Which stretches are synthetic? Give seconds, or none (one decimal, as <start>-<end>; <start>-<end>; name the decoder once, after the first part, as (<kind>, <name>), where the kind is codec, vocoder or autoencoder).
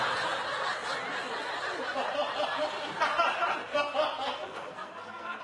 4.3-5.4 (codec, SNAC)